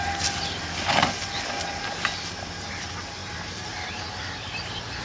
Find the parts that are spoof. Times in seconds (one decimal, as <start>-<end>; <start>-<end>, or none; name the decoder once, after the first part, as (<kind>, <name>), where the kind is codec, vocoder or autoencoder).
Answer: none